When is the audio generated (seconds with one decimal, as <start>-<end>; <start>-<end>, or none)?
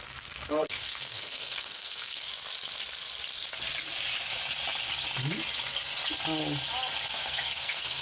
0.0-2.3; 7.1-8.0